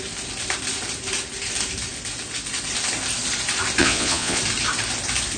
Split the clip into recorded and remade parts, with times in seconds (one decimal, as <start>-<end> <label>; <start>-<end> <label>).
0.0-3.8 recorded; 3.8-4.4 remade; 4.4-5.4 recorded

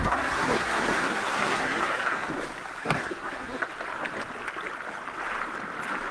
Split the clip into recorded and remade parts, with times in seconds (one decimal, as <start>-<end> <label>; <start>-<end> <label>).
0.0-2.3 remade; 2.3-2.8 recorded; 2.8-3.7 remade; 3.7-6.1 recorded

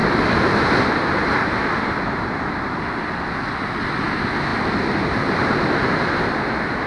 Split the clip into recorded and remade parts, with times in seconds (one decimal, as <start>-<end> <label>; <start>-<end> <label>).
0.0-6.9 recorded

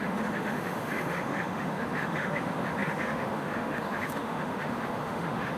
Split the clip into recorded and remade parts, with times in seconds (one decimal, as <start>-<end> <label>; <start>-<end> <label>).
0.0-5.6 remade

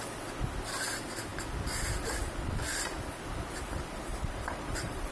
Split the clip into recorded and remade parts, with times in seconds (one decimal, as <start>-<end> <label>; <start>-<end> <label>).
0.0-4.1 recorded; 4.1-5.1 remade

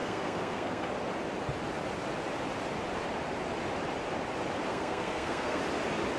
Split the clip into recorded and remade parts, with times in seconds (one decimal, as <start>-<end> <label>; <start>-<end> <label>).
0.0-0.9 remade; 0.9-4.7 recorded; 4.7-5.6 remade; 5.6-6.2 recorded

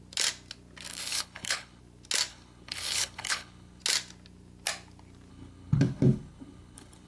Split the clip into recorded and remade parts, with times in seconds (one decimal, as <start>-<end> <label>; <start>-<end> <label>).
0.0-0.9 recorded; 0.9-1.8 remade; 1.8-2.3 recorded; 2.3-3.8 remade; 3.8-5.3 recorded; 5.3-7.1 remade

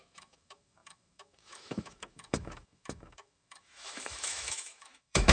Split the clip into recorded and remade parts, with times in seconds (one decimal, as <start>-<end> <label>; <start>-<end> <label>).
0.0-5.3 remade